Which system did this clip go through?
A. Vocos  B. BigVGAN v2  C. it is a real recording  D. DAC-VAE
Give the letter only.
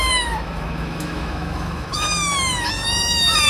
D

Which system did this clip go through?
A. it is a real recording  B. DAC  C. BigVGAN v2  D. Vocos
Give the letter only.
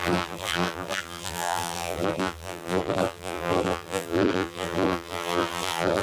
C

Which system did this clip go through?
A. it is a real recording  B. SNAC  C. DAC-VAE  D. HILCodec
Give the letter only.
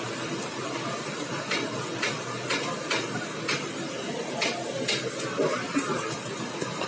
A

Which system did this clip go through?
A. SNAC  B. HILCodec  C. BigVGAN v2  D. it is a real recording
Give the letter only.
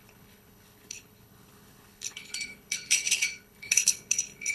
B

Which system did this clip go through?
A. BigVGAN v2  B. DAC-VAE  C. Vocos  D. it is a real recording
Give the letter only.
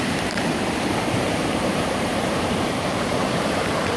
A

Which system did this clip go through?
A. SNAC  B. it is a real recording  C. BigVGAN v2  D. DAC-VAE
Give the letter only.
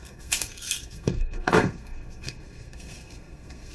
A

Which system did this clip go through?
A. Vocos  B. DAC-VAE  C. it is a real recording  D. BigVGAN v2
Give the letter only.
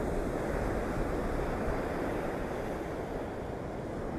C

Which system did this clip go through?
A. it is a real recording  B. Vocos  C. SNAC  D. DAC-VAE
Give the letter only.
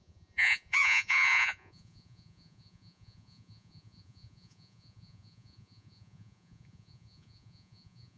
B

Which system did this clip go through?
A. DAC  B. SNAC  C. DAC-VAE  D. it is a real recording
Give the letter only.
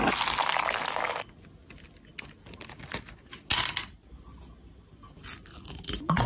D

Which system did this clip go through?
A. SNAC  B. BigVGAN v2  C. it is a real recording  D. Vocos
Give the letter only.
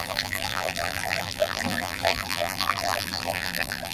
B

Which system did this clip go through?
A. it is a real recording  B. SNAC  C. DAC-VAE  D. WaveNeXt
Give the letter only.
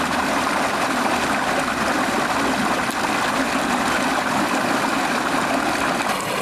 A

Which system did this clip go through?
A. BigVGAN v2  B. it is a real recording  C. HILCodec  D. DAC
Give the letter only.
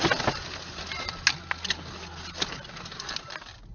B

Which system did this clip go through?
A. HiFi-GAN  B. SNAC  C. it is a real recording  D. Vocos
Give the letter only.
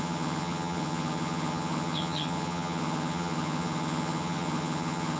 A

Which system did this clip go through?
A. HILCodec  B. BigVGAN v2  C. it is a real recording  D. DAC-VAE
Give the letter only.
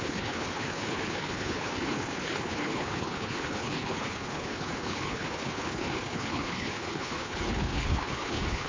A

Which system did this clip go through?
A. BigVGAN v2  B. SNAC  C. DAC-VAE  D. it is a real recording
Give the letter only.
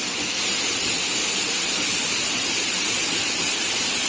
D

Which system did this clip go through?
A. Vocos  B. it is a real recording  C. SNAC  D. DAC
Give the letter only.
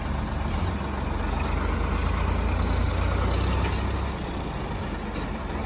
B